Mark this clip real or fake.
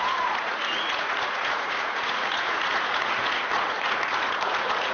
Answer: fake